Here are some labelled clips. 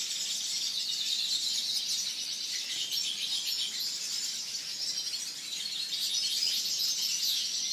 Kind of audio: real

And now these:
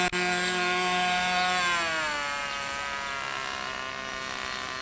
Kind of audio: real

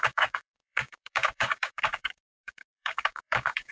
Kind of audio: fake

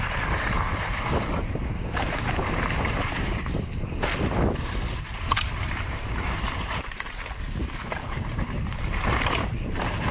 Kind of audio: fake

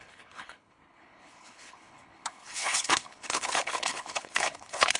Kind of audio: fake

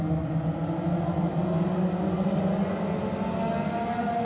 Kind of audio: real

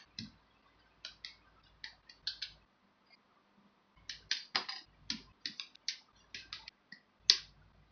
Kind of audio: real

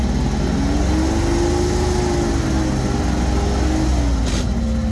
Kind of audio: real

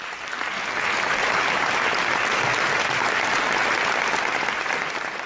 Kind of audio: real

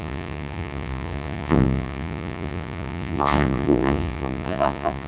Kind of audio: fake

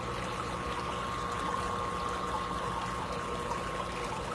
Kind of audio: real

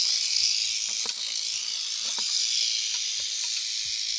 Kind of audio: real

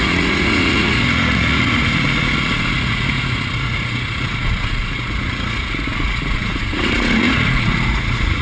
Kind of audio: fake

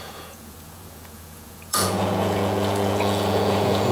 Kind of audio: fake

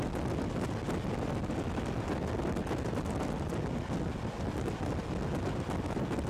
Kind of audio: real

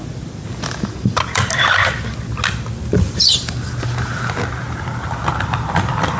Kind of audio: real